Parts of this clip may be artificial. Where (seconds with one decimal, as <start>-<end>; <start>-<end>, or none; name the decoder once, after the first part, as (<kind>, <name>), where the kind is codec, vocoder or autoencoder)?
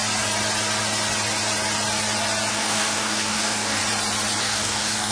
2.5-3.8 (codec, DAC); 4.4-5.1